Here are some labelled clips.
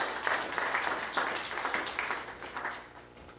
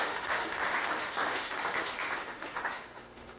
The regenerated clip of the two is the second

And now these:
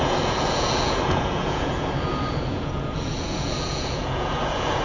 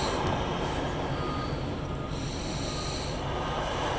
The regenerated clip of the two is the first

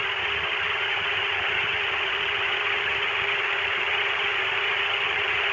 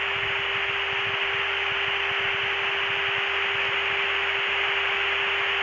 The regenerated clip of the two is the first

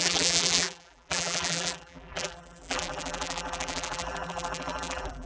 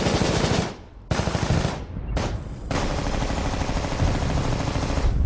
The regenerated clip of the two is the first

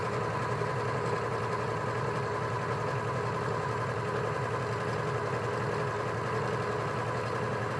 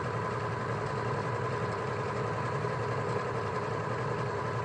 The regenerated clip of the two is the second